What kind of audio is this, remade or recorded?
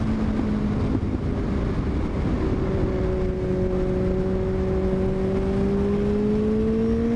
recorded